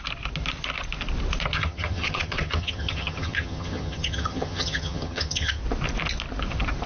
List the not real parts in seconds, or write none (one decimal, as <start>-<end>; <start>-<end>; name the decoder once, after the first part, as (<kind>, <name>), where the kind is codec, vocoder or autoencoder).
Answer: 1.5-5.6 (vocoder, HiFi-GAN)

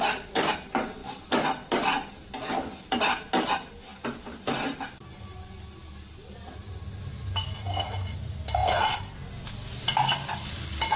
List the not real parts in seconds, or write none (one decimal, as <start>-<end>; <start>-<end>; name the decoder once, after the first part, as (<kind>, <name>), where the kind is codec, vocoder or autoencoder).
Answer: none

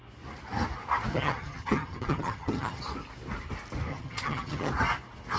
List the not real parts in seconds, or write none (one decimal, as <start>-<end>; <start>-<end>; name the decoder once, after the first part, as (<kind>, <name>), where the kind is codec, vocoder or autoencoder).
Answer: 1.1-2.8 (vocoder, HiFi-GAN); 3.9-4.7